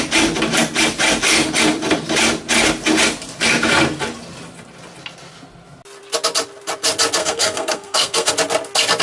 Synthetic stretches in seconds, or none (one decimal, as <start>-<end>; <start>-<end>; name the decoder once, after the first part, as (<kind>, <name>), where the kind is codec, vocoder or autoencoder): 7.2-8.3 (codec, SNAC)

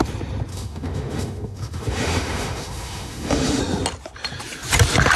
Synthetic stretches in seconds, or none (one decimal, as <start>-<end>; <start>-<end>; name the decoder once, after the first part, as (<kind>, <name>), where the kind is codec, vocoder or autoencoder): 0.5-3.6 (autoencoder, DAC-VAE)

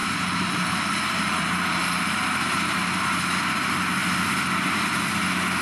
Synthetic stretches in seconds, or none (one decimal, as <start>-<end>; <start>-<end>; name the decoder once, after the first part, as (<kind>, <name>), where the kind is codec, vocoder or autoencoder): 0.0-3.4 (vocoder, BigVGAN v2)

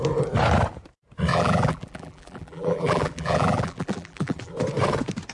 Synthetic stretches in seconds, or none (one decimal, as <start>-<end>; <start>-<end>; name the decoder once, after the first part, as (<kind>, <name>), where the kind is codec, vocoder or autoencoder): 1.3-4.5 (vocoder, BigVGAN v2)

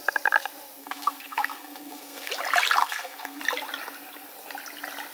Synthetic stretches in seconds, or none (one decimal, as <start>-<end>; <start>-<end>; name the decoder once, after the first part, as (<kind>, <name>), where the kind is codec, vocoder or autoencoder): 0.8-2.3 (codec, SNAC); 2.8-3.4

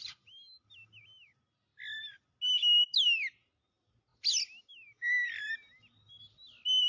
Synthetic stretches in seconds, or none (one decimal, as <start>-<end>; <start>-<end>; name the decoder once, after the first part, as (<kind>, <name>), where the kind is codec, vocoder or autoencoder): none